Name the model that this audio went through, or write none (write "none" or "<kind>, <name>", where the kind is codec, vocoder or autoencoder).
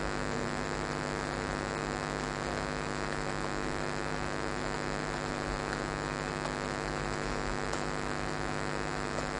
autoencoder, DAC-VAE